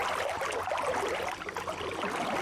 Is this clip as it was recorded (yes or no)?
yes